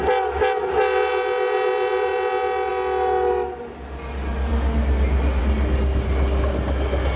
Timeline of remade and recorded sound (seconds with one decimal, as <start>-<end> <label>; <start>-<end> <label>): 0.0-7.2 recorded